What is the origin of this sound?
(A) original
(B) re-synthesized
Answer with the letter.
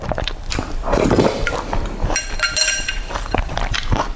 A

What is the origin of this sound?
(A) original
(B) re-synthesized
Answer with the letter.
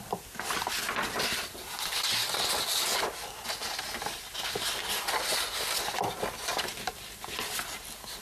A